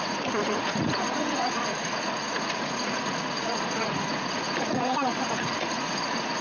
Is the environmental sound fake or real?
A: fake